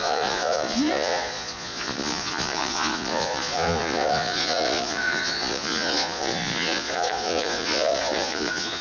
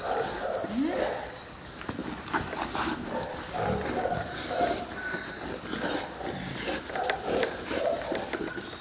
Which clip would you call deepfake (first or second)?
first